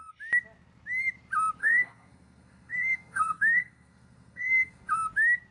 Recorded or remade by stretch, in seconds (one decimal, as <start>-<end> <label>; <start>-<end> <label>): 0.0-1.6 recorded; 1.6-4.9 remade; 4.9-5.5 recorded